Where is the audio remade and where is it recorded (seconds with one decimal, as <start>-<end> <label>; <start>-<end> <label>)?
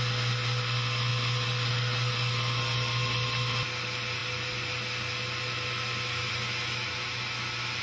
0.0-7.8 recorded